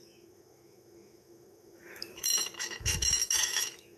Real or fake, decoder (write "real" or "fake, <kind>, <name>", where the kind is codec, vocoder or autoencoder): fake, autoencoder, DAC-VAE